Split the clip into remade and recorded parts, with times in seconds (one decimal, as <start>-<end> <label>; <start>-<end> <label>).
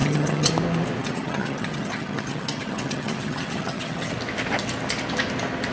0.0-0.5 remade; 0.5-1.0 recorded; 1.0-4.1 remade; 4.1-5.7 recorded